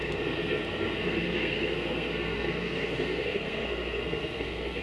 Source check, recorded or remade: remade